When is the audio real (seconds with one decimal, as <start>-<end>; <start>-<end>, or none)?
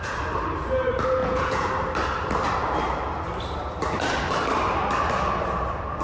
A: 0.0-1.2; 1.7-6.0